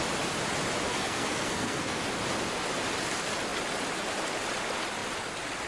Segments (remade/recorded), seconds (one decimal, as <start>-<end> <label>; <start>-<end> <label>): 0.0-0.9 recorded; 0.9-2.0 remade; 2.0-5.7 recorded

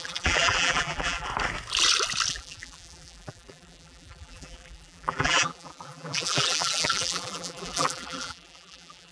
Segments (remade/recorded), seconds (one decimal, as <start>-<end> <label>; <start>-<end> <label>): 0.0-1.3 remade; 1.3-2.3 recorded; 2.3-9.1 remade

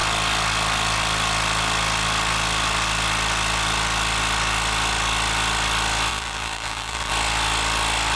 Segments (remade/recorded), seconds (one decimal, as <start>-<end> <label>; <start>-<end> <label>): 0.0-6.1 recorded; 6.1-7.1 remade; 7.1-8.2 recorded

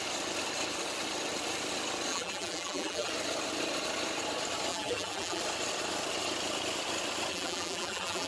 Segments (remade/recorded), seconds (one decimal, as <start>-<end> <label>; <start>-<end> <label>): 0.0-2.1 recorded; 2.1-3.1 remade; 3.1-4.7 recorded; 4.7-5.4 remade; 5.4-7.3 recorded; 7.3-8.3 remade

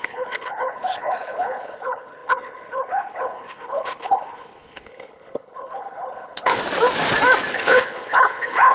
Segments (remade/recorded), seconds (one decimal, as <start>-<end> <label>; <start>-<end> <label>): 0.0-6.6 remade; 6.6-7.5 recorded; 7.5-8.7 remade